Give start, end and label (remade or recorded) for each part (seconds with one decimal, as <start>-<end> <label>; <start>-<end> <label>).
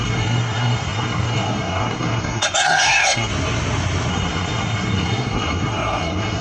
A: 0.0-3.3 remade; 3.3-4.1 recorded; 4.1-6.4 remade